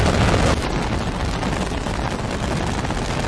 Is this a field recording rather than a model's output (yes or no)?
yes